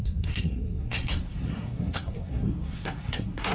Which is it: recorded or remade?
remade